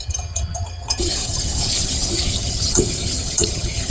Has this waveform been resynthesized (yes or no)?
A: yes